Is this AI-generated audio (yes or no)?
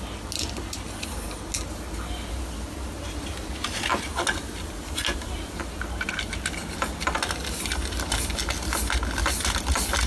no